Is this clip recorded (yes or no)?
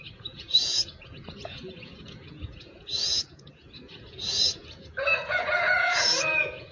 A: no